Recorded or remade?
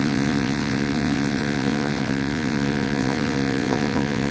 remade